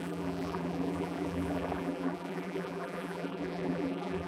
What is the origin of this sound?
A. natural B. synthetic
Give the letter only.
B